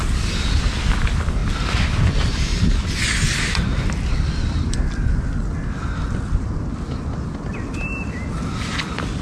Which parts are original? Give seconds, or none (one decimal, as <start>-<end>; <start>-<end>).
0.0-9.2